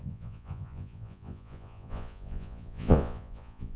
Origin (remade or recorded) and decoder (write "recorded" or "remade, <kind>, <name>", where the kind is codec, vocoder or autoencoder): remade, vocoder, Vocos